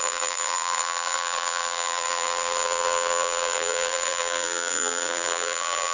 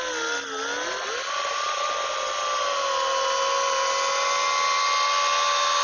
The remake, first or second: first